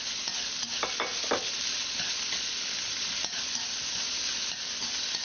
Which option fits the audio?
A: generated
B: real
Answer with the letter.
B